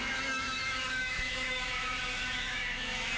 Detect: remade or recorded remade